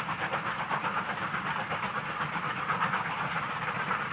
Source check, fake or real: real